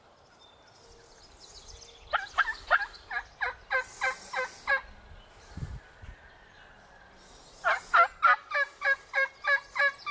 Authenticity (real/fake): real